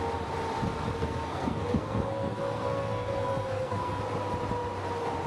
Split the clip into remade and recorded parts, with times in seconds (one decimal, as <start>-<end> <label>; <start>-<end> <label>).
0.0-1.0 recorded; 1.0-4.0 remade; 4.0-5.3 recorded